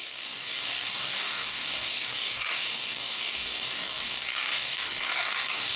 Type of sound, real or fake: fake